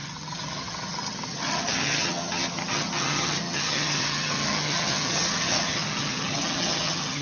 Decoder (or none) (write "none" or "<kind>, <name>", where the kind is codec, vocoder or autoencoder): vocoder, HiFi-GAN